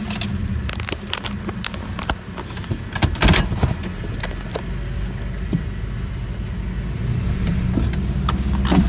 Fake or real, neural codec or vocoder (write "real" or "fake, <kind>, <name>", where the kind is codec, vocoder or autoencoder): real